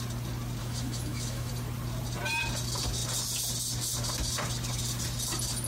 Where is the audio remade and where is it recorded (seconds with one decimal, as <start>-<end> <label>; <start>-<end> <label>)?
0.0-0.6 recorded; 0.6-1.5 remade; 1.5-5.7 recorded